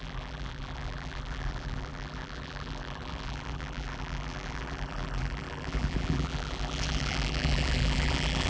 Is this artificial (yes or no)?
yes